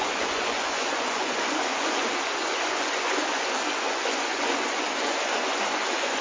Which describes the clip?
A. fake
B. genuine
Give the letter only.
A